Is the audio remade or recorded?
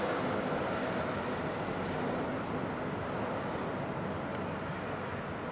recorded